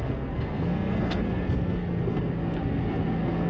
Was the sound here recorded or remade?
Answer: remade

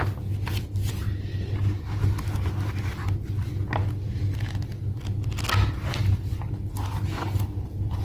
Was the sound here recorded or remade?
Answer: recorded